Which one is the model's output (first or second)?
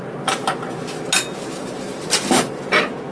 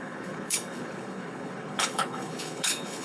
second